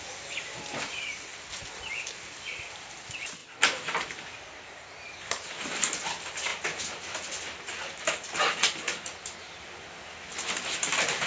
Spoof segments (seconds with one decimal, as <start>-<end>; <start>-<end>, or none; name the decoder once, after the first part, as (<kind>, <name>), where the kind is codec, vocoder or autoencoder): 0.0-1.3 (vocoder, BigVGAN v2); 2.5-3.4; 4.3-6.5; 10.4-11.3